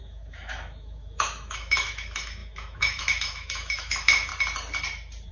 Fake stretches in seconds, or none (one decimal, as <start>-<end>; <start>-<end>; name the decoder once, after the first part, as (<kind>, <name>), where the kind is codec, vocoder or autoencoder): 0.0-4.3 (autoencoder, DAC-VAE)